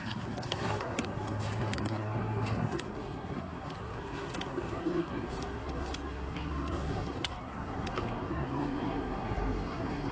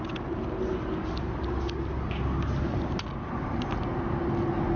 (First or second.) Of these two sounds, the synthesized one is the first